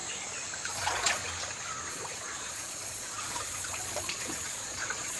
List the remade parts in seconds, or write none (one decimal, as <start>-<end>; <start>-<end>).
0.7-1.2; 1.9-5.2